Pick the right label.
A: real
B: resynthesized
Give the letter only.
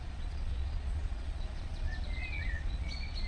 B